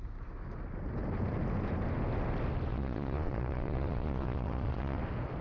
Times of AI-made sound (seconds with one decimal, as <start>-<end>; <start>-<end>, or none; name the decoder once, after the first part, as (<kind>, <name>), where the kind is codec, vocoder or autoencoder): 2.7-5.0 (vocoder, Vocos)